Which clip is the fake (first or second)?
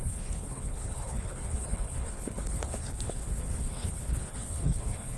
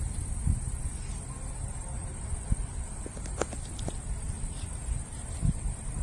first